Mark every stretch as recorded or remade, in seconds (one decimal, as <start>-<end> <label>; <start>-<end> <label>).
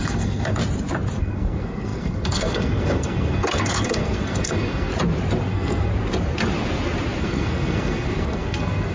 0.0-0.6 remade; 0.6-1.2 recorded; 1.2-4.9 remade; 4.9-5.4 recorded; 5.4-5.9 remade; 5.9-7.2 recorded; 7.2-8.9 remade